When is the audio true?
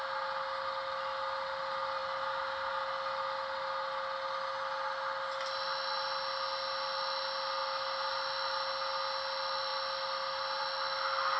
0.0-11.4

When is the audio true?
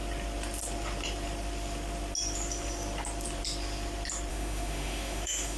0.0-4.3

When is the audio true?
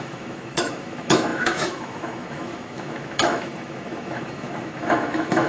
none